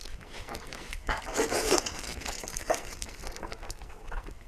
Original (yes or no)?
no